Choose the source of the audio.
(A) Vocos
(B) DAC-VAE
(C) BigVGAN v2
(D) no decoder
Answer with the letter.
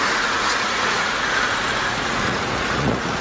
A